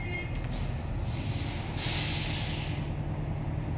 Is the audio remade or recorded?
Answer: recorded